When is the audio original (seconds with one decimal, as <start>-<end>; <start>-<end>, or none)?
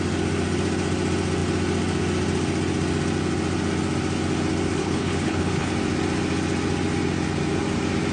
0.0-4.8; 5.7-8.1